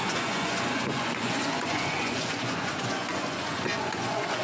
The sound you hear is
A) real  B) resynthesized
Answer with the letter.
B